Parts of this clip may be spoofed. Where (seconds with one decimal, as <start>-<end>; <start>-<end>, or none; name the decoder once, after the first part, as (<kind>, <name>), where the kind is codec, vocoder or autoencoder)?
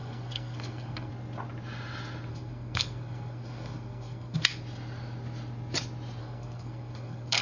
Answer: 0.0-1.1 (codec, SNAC); 2.3-4.5; 6.2-7.4